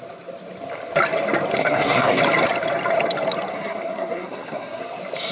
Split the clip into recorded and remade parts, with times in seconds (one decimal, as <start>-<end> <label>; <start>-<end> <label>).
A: 0.0-1.6 recorded; 1.6-2.2 remade; 2.2-3.5 recorded; 3.5-4.8 remade; 4.8-5.3 recorded